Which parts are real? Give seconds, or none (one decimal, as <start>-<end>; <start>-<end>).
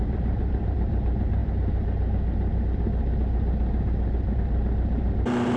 1.4-4.3